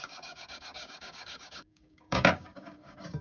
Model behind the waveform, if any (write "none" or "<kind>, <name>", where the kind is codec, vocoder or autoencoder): codec, DAC